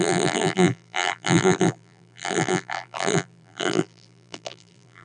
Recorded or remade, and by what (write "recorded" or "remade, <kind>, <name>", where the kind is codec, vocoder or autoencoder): remade, vocoder, BigVGAN v2